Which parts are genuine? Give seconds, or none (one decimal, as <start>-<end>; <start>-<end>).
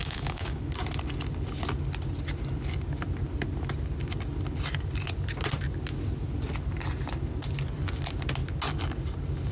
0.6-9.5